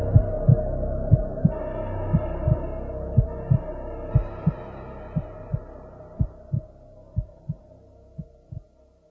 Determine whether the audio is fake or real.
real